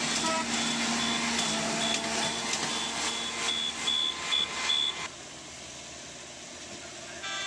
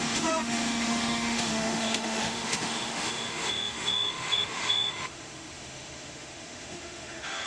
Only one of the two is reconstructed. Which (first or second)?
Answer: second